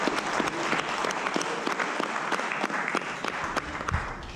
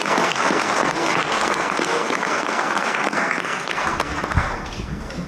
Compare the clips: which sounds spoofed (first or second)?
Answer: second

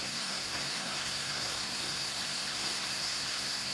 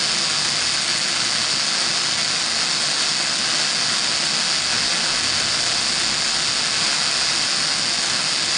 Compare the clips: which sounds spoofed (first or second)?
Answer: first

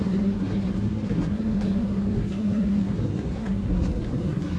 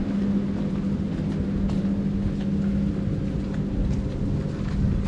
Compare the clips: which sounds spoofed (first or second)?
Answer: first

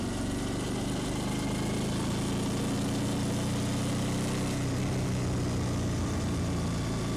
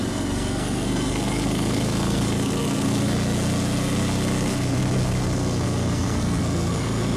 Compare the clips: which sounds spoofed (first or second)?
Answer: second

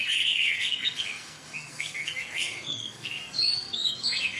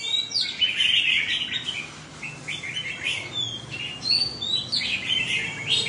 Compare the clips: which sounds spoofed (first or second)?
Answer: first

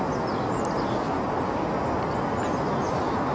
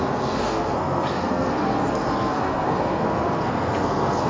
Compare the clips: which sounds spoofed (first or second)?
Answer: second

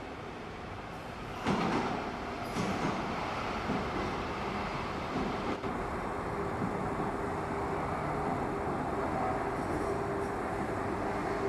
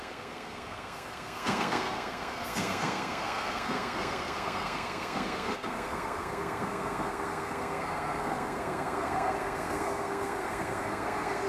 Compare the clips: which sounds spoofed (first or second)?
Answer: second